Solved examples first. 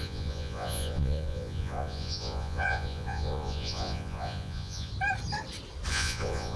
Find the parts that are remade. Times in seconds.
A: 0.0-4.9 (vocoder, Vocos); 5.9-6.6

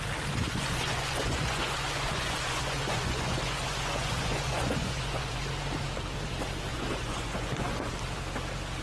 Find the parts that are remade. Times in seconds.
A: 0.4-5.5 (vocoder, Vocos); 6.7-7.9

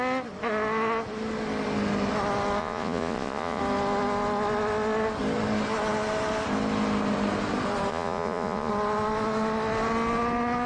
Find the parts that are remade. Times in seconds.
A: 2.6-3.6 (vocoder, Vocos); 7.9-8.7